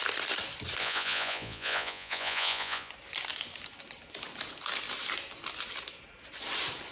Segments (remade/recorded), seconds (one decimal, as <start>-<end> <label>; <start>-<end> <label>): 0.0-0.8 recorded; 0.8-2.9 remade; 2.9-6.9 recorded